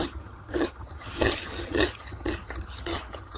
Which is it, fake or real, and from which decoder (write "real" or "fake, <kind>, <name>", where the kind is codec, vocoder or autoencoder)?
fake, vocoder, HiFi-GAN